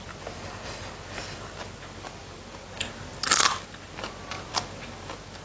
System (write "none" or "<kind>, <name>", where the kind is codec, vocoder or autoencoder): none